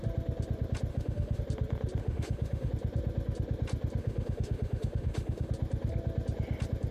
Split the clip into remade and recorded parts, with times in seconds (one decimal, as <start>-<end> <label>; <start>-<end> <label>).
0.0-0.9 recorded; 0.9-1.4 remade; 1.4-2.0 recorded; 2.0-2.7 remade; 2.7-4.0 recorded; 4.0-5.5 remade; 5.5-6.9 recorded